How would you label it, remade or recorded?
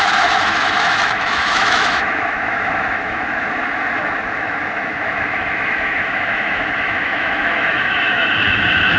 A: remade